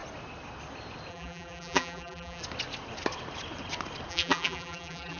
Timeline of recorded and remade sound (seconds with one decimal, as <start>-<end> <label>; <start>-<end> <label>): 0.0-1.1 recorded; 1.1-2.4 remade; 2.4-4.1 recorded; 4.1-5.2 remade